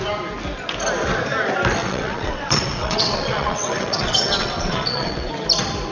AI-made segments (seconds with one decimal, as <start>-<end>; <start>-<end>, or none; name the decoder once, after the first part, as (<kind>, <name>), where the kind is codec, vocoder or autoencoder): 1.8-5.3 (vocoder, WaveNeXt)